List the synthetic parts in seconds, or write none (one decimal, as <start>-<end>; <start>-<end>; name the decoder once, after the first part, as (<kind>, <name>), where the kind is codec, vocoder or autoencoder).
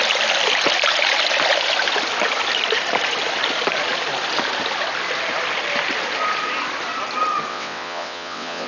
7.5-8.7 (vocoder, WaveNeXt)